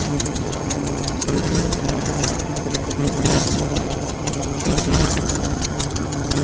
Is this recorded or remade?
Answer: remade